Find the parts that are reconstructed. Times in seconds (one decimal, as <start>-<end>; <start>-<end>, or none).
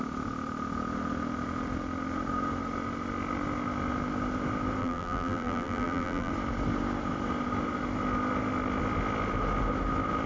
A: 4.8-6.3